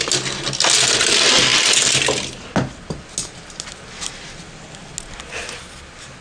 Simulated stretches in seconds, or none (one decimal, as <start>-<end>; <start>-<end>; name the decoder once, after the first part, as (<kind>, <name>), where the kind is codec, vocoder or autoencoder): none